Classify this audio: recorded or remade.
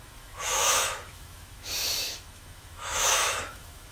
remade